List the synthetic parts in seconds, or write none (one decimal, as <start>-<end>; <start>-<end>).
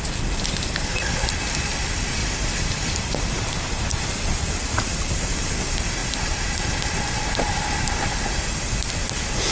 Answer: 2.2-5.5